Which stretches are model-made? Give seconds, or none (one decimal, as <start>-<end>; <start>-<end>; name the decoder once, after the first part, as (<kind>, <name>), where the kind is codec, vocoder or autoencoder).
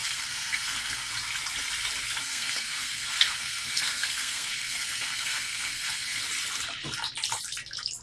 0.0-1.1 (codec, SNAC); 2.2-6.2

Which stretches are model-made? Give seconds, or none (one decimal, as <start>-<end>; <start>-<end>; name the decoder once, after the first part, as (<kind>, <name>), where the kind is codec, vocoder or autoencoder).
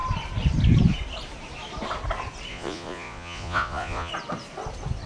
2.5-4.1 (vocoder, Vocos)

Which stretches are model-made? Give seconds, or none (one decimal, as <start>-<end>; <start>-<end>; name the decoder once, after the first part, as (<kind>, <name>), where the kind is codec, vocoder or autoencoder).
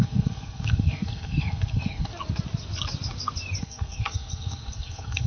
0.0-2.1 (codec, SNAC); 3.6-5.3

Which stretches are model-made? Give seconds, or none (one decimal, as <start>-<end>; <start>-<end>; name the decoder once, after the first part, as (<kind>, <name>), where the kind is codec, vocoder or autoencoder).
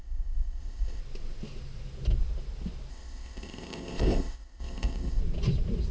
0.0-1.0 (codec, ZipCodec); 2.9-5.2